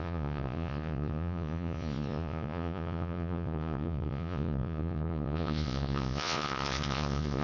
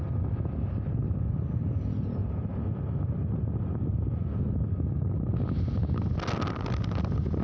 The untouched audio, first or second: second